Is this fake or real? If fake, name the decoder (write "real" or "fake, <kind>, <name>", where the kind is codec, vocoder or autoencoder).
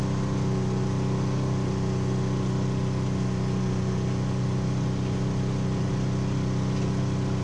real